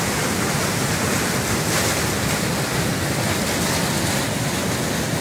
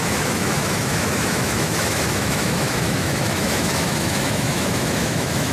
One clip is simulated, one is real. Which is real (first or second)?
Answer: first